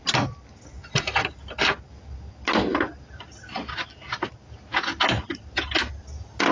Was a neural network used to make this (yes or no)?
no